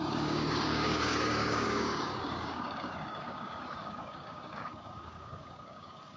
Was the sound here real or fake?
fake